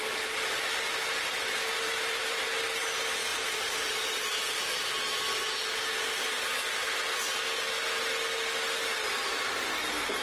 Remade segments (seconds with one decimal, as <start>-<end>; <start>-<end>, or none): 1.4-2.5; 3.3-4.9